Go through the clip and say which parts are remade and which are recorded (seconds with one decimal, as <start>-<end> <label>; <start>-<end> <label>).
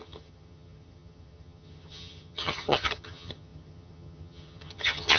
0.0-5.2 remade